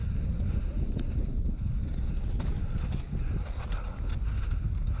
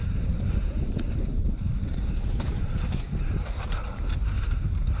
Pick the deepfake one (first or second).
second